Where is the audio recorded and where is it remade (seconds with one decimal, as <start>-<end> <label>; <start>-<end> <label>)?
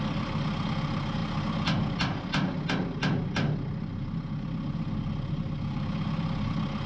0.0-6.9 recorded